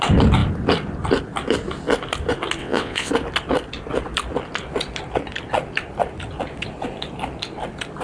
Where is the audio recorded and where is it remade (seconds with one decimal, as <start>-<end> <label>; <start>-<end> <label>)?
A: 0.0-2.6 recorded; 2.6-3.1 remade; 3.1-8.0 recorded